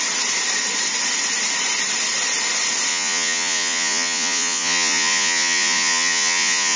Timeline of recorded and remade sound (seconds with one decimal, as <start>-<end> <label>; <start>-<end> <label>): 0.0-2.9 recorded; 2.9-6.8 remade